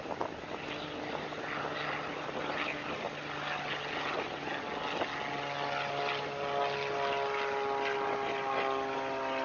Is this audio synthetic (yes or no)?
no